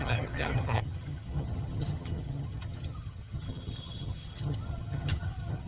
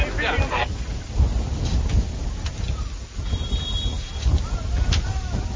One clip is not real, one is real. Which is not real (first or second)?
first